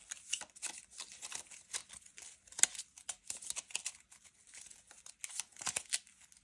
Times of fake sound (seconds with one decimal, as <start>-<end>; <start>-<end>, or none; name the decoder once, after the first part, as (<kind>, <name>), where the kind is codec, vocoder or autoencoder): none